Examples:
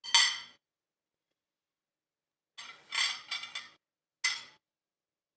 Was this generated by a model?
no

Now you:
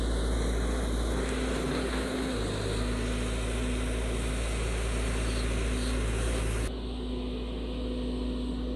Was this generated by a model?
no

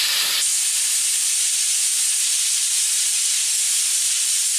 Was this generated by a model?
no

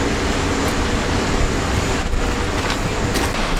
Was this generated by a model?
no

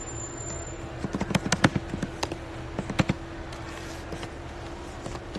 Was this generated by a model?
no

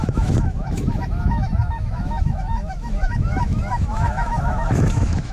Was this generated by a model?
yes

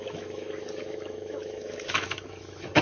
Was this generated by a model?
yes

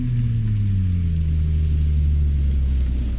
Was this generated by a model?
no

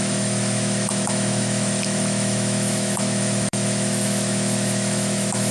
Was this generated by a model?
yes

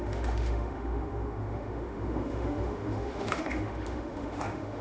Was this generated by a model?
yes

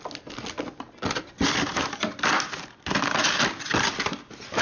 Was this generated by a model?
no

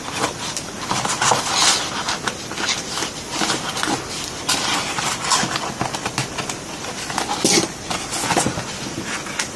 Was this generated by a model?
no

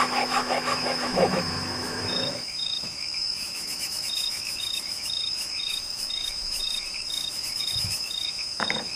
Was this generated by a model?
yes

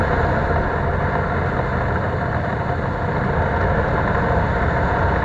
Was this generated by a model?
no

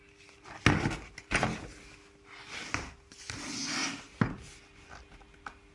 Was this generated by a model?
no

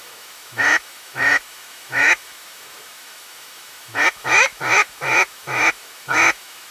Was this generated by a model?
yes